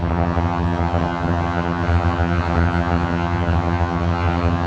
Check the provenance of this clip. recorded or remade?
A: remade